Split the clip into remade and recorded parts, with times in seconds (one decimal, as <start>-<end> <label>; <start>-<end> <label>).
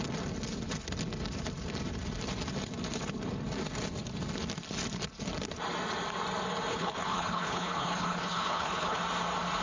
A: 0.0-6.7 recorded; 6.7-9.0 remade; 9.0-9.6 recorded